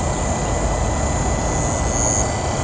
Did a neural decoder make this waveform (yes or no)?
no